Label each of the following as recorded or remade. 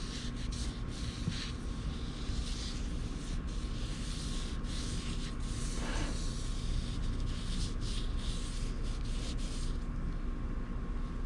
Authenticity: recorded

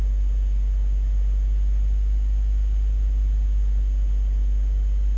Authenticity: recorded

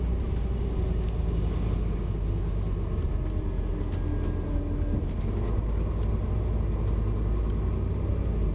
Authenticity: recorded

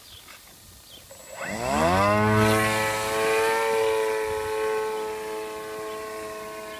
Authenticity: recorded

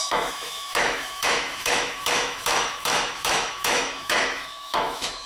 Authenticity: remade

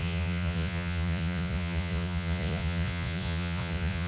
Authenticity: remade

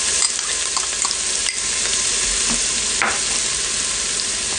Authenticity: recorded